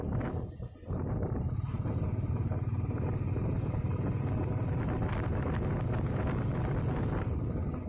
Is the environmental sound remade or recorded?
recorded